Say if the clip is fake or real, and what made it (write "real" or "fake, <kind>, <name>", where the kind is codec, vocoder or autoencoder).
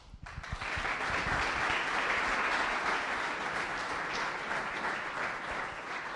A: real